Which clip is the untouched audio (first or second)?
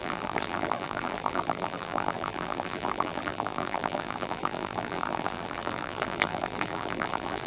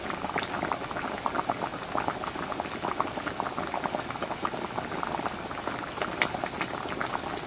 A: second